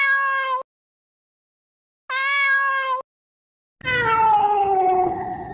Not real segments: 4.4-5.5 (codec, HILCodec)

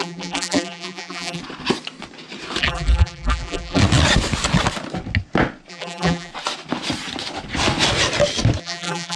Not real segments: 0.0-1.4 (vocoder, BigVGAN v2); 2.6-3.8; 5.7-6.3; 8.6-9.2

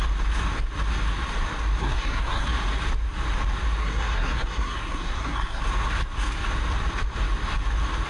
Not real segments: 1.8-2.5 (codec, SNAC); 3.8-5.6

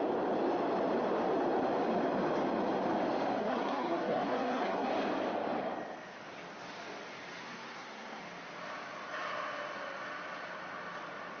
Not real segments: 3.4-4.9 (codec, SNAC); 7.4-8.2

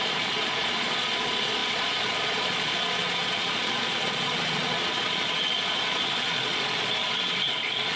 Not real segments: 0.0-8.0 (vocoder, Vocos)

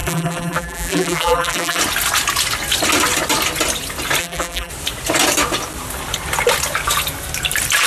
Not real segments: 0.0-1.8 (vocoder, BigVGAN v2); 4.2-4.7